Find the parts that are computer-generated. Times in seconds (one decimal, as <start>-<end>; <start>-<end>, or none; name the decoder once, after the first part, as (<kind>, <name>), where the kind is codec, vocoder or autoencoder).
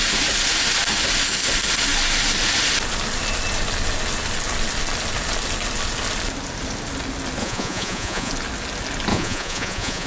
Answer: 7.4-8.3 (vocoder, Vocos); 9.1-10.1